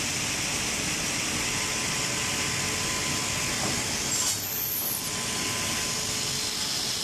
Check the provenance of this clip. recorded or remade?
recorded